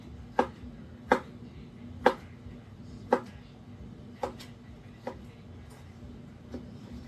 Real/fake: real